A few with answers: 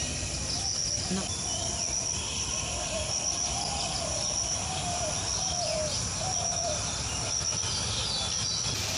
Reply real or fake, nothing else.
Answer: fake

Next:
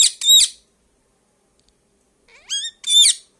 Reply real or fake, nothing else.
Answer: real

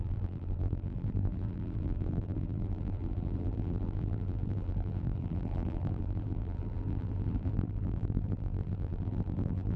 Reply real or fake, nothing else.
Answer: fake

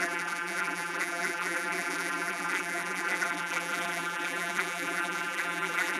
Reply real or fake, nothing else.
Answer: fake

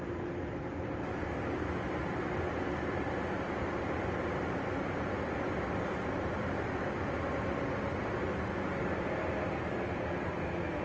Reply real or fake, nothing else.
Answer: real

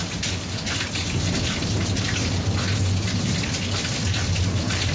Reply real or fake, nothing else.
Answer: real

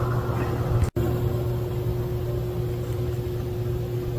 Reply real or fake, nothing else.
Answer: real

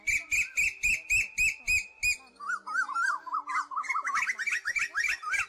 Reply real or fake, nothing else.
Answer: real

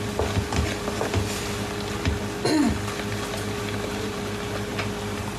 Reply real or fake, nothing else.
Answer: real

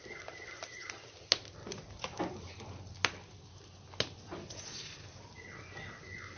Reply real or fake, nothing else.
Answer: real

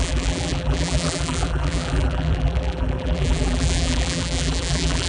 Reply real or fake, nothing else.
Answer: fake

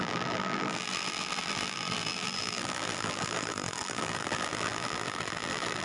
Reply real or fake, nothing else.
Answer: fake